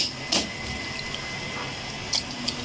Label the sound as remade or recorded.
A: recorded